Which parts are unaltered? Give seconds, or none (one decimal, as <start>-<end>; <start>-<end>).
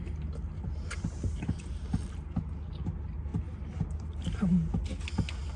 0.0-5.6